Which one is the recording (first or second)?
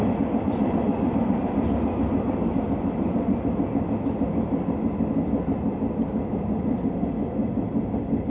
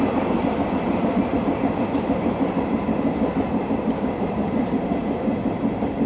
first